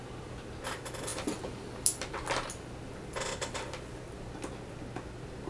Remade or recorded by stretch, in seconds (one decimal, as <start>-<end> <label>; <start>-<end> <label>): 0.0-5.5 recorded